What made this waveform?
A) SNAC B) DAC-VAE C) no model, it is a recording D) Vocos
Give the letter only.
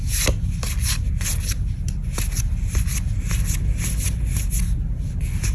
C